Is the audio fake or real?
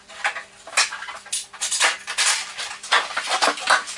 real